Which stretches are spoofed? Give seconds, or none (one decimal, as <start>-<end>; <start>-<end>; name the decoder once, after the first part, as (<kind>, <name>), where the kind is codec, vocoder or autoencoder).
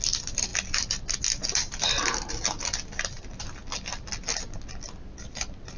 none